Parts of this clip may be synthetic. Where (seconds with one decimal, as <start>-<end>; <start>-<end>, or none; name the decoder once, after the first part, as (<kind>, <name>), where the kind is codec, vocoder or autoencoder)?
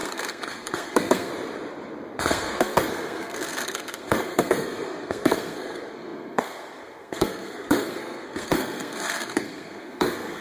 0.0-1.3 (codec, SNAC); 2.2-10.4